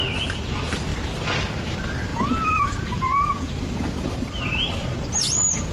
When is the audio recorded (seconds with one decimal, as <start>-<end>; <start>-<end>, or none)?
0.0-2.1; 3.5-5.7